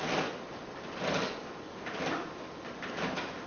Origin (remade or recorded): recorded